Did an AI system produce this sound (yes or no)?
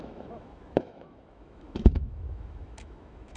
yes